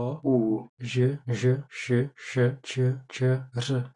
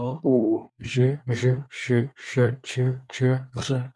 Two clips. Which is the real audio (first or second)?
first